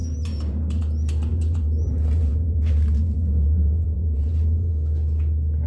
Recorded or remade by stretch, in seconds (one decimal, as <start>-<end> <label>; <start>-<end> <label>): 0.0-0.8 remade; 0.8-1.3 recorded; 1.3-4.7 remade; 4.7-5.7 recorded